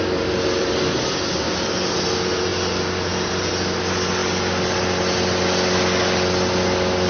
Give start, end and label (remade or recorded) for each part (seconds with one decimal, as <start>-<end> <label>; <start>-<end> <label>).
0.0-7.1 recorded